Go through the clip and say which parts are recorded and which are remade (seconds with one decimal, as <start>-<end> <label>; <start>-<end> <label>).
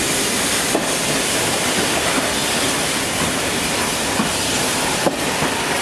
0.0-5.8 recorded